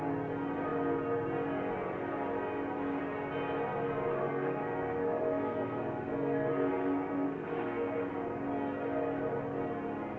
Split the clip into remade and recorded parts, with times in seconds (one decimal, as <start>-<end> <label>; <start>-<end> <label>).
0.0-4.1 recorded; 4.1-8.1 remade; 8.1-10.2 recorded